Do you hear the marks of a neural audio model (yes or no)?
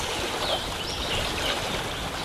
no